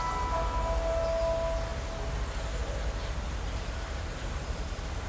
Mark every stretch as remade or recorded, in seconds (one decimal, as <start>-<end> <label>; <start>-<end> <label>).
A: 0.0-5.1 recorded